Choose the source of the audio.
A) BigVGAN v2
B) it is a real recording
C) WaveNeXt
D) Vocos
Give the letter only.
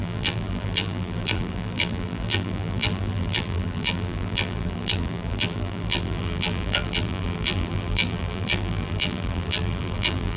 A